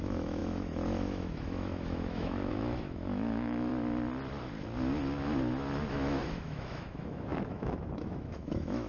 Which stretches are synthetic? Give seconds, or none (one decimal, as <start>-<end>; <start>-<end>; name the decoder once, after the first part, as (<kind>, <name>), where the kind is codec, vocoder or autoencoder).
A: 0.0-3.7 (autoencoder, DAC-VAE); 5.9-8.9